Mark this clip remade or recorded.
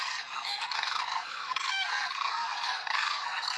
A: remade